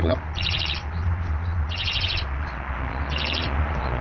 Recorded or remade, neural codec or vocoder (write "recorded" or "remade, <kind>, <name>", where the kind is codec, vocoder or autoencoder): remade, vocoder, Vocos